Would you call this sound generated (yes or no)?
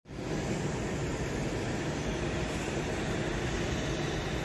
no